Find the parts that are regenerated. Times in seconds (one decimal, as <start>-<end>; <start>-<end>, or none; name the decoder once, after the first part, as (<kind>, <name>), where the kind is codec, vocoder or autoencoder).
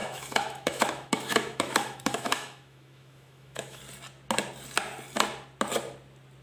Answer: 0.0-3.8 (autoencoder, DAC-VAE)